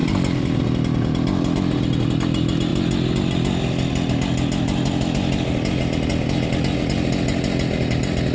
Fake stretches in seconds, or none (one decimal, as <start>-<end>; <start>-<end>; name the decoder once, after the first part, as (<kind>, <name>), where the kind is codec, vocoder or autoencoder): none